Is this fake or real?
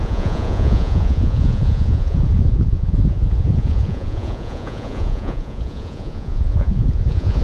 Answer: fake